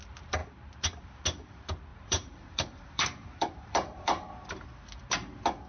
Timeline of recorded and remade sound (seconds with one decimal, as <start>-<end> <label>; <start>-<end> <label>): 0.0-1.9 recorded; 1.9-4.3 remade; 4.3-5.7 recorded